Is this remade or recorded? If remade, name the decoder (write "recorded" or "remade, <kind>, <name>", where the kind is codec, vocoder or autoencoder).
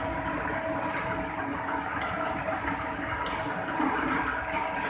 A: recorded